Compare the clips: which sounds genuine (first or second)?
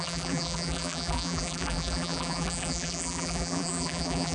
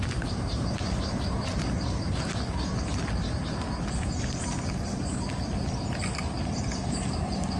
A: second